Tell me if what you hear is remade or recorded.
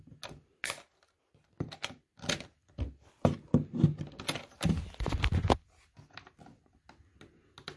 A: recorded